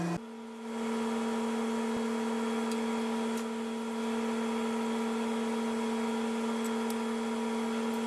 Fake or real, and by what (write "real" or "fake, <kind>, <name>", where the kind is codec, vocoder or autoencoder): real